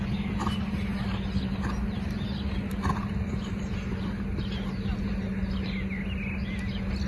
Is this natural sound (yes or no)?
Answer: yes